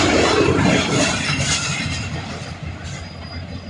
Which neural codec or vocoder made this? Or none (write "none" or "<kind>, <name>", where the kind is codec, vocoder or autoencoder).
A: none